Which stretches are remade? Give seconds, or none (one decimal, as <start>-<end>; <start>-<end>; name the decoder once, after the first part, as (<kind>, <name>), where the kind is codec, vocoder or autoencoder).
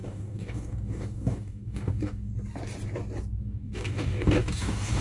0.0-2.3 (codec, DAC); 3.4-5.0